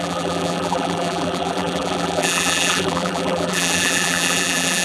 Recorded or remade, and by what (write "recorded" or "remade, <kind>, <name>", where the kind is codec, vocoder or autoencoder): remade, vocoder, BigVGAN v2